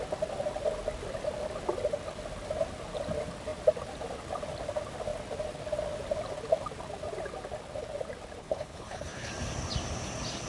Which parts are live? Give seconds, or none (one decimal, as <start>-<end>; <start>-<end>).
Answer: 0.0-8.4; 9.3-10.5